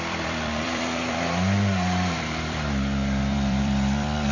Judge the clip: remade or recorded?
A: remade